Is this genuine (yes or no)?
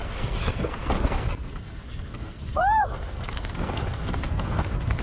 no